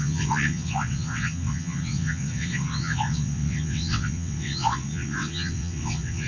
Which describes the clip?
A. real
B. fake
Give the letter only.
B